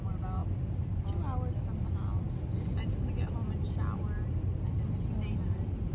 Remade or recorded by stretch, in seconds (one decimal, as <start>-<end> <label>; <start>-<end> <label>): 0.0-5.9 recorded